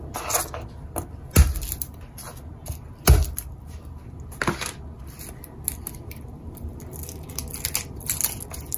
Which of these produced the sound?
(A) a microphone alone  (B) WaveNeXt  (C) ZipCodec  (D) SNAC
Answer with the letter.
A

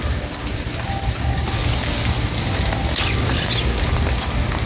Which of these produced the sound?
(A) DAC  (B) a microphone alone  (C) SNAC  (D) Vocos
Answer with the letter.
B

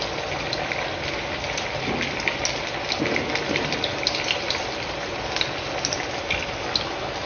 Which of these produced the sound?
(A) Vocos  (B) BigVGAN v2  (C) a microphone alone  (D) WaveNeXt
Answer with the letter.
C